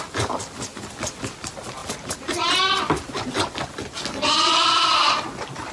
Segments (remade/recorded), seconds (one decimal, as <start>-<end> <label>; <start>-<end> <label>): 0.0-5.7 recorded